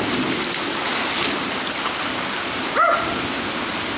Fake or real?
real